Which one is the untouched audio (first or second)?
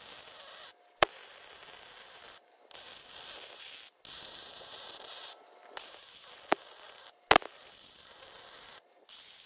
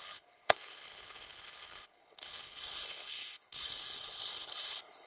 first